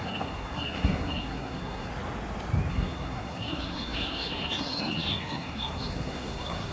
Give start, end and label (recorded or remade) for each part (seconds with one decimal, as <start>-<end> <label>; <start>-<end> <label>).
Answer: 0.0-1.9 remade; 1.9-2.7 recorded; 2.7-6.7 remade